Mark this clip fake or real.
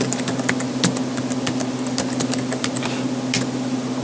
real